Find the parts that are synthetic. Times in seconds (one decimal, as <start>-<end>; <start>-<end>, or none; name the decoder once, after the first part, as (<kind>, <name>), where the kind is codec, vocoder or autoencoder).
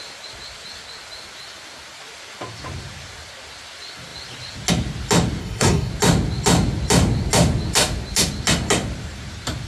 5.4-5.9 (codec, SNAC)